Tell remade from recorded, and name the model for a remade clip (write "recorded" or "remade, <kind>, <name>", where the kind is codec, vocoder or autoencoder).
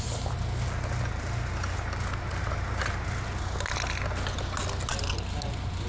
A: recorded